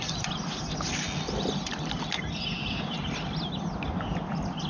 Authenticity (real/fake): real